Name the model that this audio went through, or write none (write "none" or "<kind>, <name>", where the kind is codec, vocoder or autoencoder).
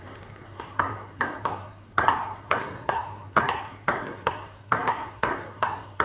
codec, SNAC